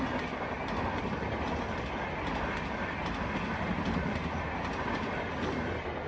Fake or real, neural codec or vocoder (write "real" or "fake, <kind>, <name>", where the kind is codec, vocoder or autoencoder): real